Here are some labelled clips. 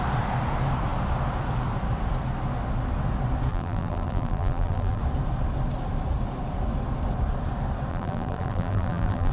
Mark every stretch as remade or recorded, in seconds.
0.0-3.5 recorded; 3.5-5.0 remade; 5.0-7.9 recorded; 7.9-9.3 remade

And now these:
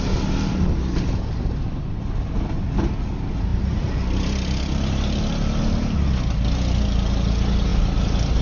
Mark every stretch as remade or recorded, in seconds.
0.0-3.5 recorded; 3.5-5.2 remade; 5.2-8.4 recorded

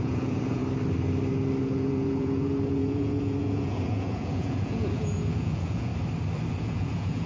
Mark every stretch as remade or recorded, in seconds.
0.0-0.6 remade; 0.6-1.6 recorded; 1.6-5.9 remade; 5.9-6.5 recorded; 6.5-7.3 remade